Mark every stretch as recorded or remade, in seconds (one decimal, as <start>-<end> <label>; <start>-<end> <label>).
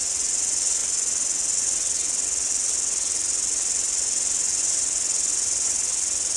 0.0-6.4 recorded